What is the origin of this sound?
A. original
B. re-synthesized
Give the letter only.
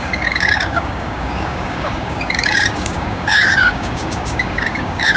B